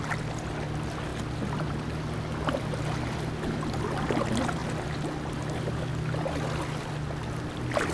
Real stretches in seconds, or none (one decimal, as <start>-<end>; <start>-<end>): 0.0-7.9